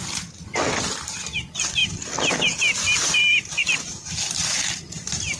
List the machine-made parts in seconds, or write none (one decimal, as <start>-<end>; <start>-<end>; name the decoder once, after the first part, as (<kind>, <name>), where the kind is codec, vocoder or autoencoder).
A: none